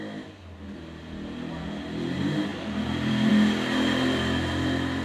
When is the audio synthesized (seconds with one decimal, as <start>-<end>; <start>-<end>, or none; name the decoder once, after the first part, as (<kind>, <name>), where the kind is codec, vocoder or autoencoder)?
2.5-3.3 (vocoder, BigVGAN v2)